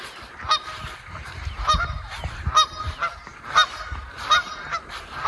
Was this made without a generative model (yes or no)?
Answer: no